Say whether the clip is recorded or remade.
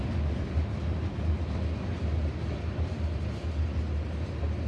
recorded